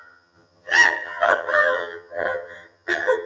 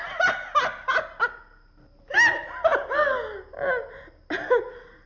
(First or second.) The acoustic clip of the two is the second